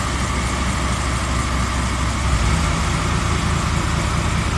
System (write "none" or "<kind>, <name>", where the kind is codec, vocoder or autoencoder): none